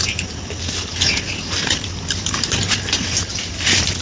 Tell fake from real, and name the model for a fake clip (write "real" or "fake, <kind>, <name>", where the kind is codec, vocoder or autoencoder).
real